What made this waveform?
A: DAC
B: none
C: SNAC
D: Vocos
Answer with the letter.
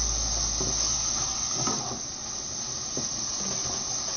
B